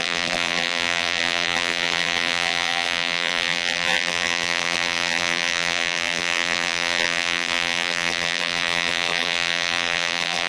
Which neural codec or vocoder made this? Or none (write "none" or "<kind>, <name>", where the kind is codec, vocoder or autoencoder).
vocoder, BigVGAN v2